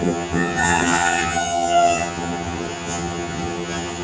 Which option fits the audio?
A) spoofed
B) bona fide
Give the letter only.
A